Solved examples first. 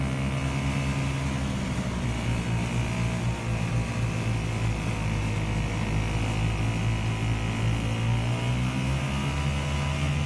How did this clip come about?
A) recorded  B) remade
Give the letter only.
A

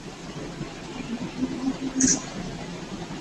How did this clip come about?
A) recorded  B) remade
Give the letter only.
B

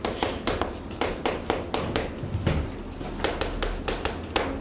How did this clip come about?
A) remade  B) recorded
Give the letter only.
B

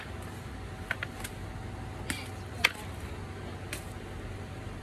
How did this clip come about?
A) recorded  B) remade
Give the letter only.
A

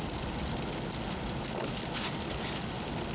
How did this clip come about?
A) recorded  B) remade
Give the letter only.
A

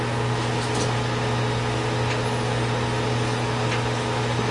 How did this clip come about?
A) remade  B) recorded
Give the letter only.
B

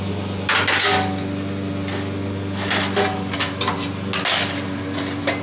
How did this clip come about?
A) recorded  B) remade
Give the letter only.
A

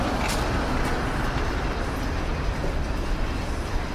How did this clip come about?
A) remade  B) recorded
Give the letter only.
B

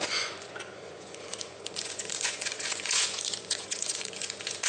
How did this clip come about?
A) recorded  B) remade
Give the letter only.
B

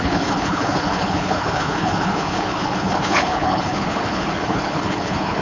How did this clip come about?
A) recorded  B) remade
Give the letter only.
B